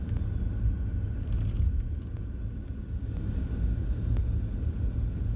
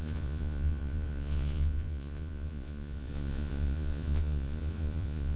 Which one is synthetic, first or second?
second